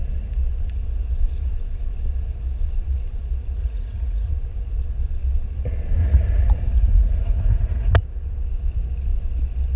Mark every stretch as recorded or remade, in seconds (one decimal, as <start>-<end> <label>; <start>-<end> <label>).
0.0-3.6 recorded; 3.6-4.3 remade; 4.3-6.0 recorded; 6.0-7.9 remade; 7.9-9.8 recorded